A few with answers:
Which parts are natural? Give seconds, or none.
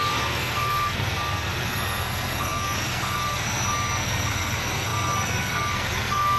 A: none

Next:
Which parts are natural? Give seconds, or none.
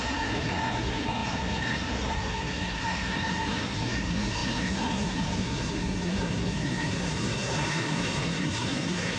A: none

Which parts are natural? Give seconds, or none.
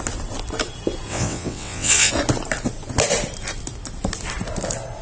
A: 0.0-1.1; 2.1-5.0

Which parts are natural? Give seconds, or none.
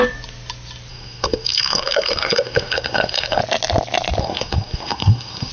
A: 0.0-0.9; 3.4-4.2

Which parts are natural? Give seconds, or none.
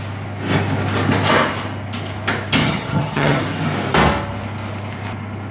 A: 0.0-2.6; 3.4-5.5